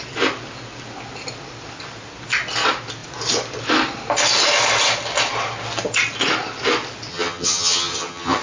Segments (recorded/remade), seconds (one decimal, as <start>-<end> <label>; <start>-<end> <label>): 0.0-7.1 recorded; 7.1-8.4 remade